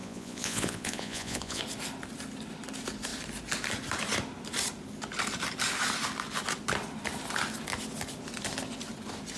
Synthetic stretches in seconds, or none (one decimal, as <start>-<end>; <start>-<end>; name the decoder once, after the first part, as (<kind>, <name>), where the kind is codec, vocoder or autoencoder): 0.0-1.6 (vocoder, Vocos)